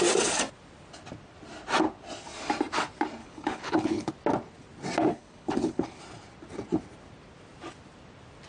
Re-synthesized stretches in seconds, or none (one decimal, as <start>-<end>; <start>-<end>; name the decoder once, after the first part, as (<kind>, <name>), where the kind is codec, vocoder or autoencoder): 3.2-4.1 (codec, HILCodec); 5.1-6.0